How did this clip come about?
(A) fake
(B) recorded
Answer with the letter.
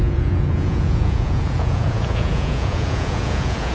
A